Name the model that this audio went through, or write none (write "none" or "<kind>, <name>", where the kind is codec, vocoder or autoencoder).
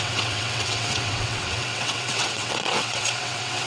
vocoder, WaveNeXt